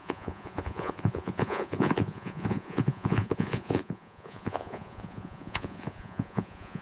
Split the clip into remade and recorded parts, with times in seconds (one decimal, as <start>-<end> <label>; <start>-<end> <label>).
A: 0.0-6.8 remade